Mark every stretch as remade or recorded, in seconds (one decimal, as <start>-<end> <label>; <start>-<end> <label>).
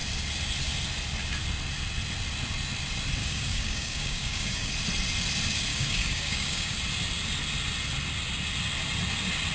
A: 0.0-3.2 recorded; 3.2-4.7 remade; 4.7-5.7 recorded; 5.7-6.8 remade; 6.8-9.5 recorded